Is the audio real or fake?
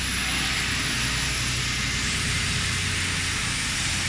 real